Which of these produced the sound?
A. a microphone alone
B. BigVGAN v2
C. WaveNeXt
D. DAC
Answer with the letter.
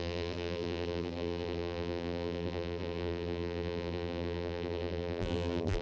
B